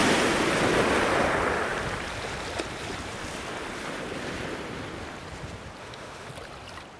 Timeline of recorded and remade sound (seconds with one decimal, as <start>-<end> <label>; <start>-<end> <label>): 0.0-5.8 recorded; 5.8-6.3 remade; 6.3-7.0 recorded